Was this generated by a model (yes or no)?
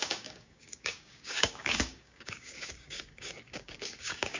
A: yes